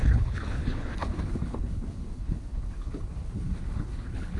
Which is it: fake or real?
fake